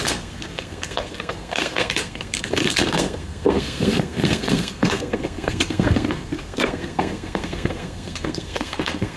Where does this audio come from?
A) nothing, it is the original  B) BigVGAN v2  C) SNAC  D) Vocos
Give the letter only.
C